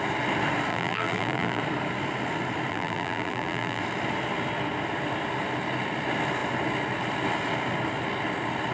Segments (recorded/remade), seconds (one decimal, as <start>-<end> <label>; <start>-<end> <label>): 0.0-0.7 recorded; 0.7-1.6 remade; 1.6-2.7 recorded; 2.7-3.8 remade; 3.8-8.7 recorded